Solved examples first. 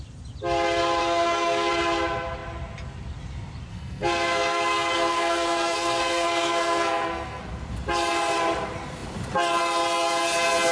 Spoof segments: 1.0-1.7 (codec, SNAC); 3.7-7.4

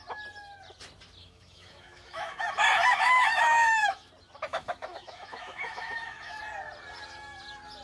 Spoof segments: 1.2-2.5 (autoencoder, DAC-VAE); 2.9-4.1; 4.5-6.4

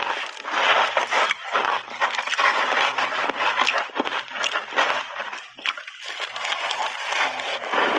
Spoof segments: none

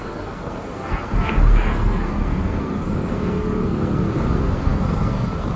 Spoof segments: 0.0-5.6 (codec, SNAC)

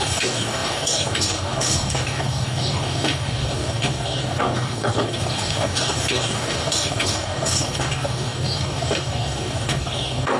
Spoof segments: 0.0-10.4 (codec, DAC)

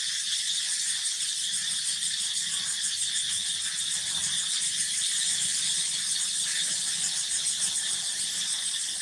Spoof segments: none

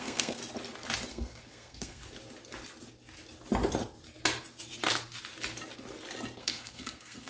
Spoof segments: 0.0-0.4 (codec, SNAC); 1.1-2.0; 6.4-7.3